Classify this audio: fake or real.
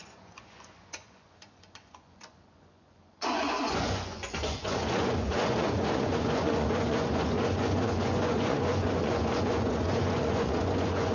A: fake